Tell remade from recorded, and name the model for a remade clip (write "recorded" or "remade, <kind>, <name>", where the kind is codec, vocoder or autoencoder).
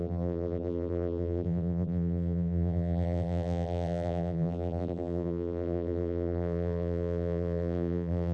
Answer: remade, vocoder, BigVGAN v2